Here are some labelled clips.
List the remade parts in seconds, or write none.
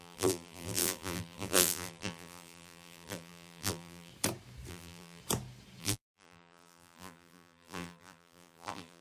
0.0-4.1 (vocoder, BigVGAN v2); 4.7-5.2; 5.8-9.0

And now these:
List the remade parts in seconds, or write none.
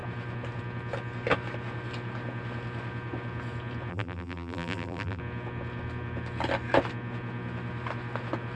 3.9-5.2 (vocoder, BigVGAN v2)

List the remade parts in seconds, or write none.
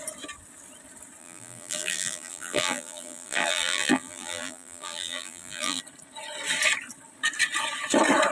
1.2-5.8 (vocoder, BigVGAN v2)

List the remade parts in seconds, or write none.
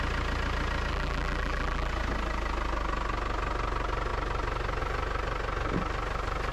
0.9-1.9 (vocoder, BigVGAN v2)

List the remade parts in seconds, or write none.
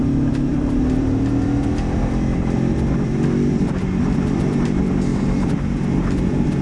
0.0-6.6 (vocoder, BigVGAN v2)